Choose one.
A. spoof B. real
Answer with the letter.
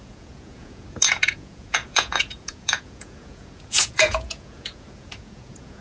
A